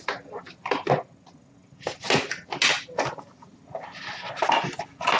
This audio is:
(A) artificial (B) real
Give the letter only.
B